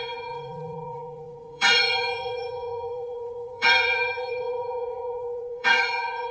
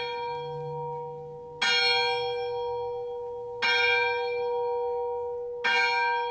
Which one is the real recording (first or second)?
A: second